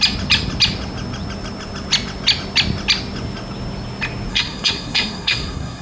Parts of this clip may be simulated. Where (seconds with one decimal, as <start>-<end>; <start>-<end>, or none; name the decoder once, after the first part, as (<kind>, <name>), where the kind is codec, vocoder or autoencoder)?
4.3-5.8 (codec, SNAC)